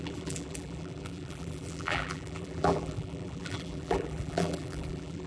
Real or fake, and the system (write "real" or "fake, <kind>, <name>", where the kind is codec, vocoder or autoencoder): fake, vocoder, BigVGAN v2